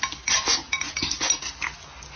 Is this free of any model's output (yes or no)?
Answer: yes